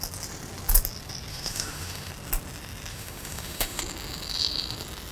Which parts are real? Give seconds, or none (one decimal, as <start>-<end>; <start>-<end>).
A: 0.0-1.3; 2.1-2.9; 3.8-5.1